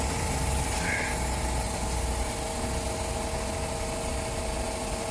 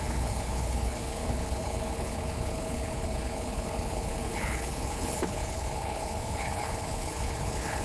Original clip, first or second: first